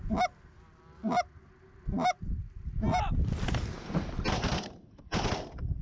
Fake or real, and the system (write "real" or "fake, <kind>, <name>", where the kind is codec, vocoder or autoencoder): real